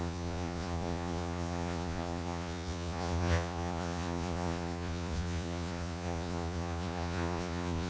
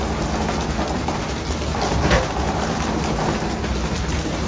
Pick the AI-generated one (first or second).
first